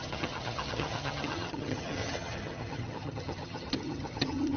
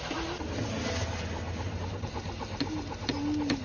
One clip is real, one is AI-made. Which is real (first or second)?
second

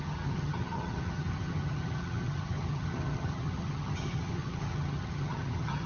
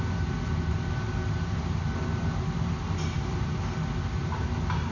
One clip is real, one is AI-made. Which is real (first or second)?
second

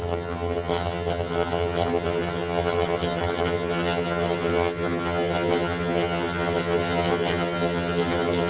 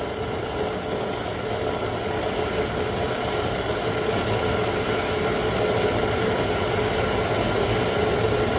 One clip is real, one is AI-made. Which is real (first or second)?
second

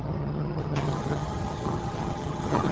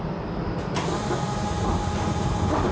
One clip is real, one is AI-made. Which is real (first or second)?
second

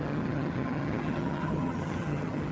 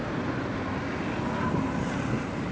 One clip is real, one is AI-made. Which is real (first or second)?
second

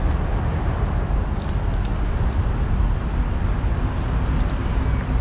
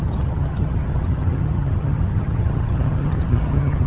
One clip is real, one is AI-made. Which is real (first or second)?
first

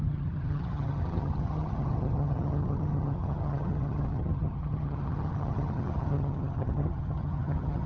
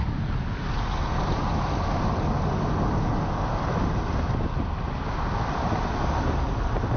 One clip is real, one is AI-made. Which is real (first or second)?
second